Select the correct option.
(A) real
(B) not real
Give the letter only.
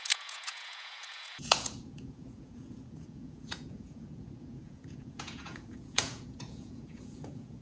B